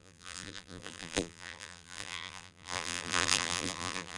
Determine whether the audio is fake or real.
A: fake